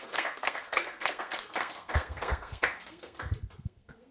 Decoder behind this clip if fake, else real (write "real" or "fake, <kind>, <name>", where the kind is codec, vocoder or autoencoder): fake, codec, SNAC